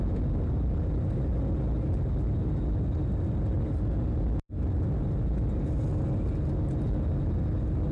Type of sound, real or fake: real